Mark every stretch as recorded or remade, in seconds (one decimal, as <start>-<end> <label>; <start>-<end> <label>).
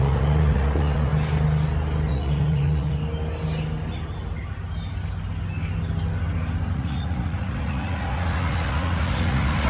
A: 0.0-1.1 remade; 1.1-2.1 recorded; 2.1-3.0 remade; 3.0-6.7 recorded; 6.7-9.7 remade